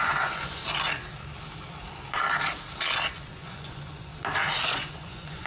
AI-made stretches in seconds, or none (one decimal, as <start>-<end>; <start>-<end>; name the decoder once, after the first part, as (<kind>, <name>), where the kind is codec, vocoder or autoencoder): 0.0-0.6 (vocoder, Vocos); 3.1-4.1; 4.7-5.5

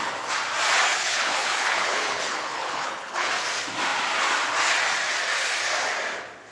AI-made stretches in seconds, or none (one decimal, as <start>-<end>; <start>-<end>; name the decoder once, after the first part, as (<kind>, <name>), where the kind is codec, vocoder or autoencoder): 0.9-3.3 (codec, HILCodec)

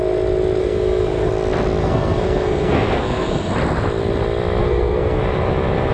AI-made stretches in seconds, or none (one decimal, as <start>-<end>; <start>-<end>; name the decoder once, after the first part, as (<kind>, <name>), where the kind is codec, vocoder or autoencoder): 0.6-1.3 (codec, SNAC); 1.8-3.5; 4.6-5.2